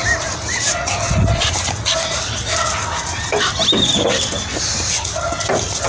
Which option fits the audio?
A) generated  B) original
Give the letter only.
B